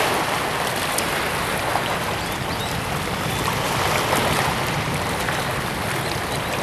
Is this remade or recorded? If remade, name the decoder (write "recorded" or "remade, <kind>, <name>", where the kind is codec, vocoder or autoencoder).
recorded